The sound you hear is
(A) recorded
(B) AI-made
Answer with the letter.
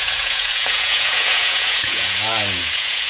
B